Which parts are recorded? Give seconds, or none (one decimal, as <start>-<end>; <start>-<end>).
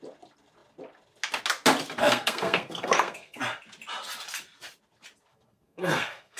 0.0-2.0; 3.4-5.3